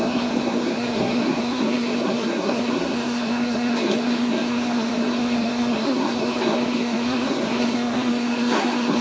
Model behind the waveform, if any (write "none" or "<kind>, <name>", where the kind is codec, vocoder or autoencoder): codec, SNAC